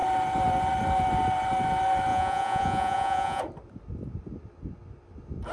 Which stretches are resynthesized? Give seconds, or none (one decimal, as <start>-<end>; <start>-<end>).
2.1-3.4